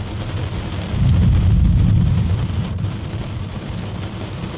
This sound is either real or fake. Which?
real